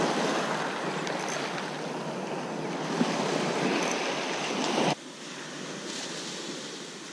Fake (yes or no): no